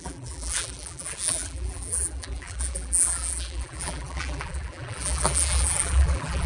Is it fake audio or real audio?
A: fake